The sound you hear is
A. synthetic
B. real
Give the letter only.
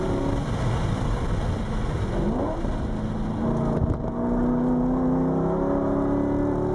B